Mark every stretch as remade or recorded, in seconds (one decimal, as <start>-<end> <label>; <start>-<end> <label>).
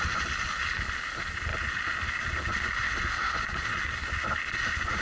0.0-5.0 recorded